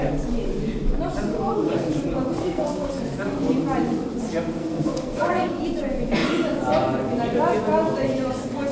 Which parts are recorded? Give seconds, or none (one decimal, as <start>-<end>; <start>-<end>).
0.0-1.3; 1.9-2.4; 3.0-4.6; 5.6-8.7